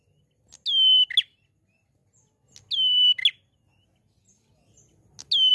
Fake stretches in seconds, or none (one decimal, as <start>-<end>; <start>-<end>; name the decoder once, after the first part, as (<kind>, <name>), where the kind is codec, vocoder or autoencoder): none